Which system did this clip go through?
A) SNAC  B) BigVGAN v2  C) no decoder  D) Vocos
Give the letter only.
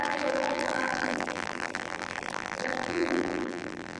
B